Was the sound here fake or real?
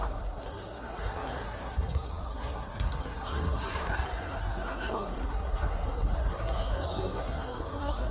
fake